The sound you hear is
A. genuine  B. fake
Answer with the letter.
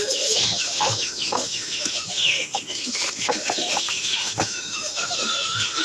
B